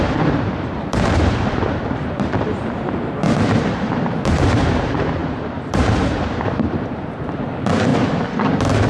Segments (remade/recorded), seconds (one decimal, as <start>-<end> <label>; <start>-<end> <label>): 0.0-7.9 remade; 7.9-8.4 recorded; 8.4-8.9 remade